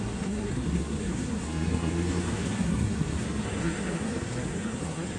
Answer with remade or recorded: remade